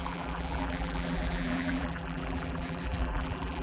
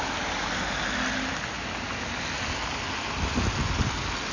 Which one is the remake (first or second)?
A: first